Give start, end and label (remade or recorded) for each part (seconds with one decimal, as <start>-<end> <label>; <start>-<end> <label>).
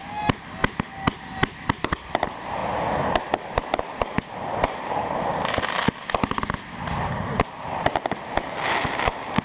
0.0-9.4 recorded